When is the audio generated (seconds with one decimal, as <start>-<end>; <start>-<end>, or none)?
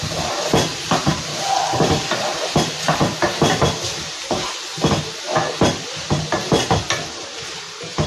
0.0-1.3; 2.1-8.1